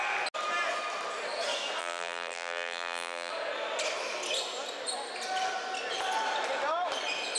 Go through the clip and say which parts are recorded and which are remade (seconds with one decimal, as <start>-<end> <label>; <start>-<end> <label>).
0.0-1.8 recorded; 1.8-3.3 remade; 3.3-7.4 recorded